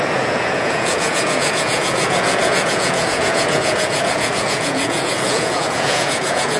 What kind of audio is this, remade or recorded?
remade